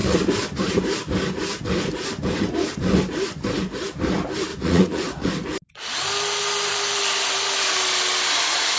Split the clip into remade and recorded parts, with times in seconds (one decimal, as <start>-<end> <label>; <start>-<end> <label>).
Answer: 0.0-4.5 recorded; 4.5-5.3 remade; 5.3-8.8 recorded